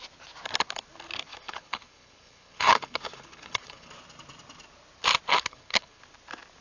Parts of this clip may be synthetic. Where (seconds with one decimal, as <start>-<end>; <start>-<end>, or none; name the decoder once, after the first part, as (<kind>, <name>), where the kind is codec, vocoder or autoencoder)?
1.3-3.9 (codec, HILCodec); 5.3-6.0